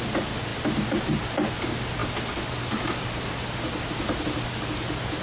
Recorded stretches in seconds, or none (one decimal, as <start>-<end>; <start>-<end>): 0.0-5.2